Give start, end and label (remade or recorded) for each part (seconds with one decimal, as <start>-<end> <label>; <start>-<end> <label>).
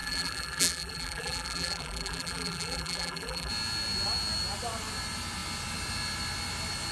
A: 0.0-3.5 remade; 3.5-6.9 recorded